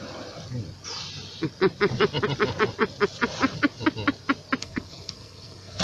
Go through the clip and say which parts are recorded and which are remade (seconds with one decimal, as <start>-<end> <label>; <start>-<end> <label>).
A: 0.0-4.6 recorded; 4.6-5.8 remade